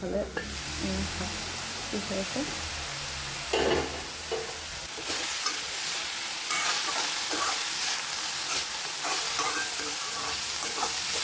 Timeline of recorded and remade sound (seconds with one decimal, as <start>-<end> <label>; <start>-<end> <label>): 0.0-4.7 recorded; 4.7-6.9 remade; 6.9-11.2 recorded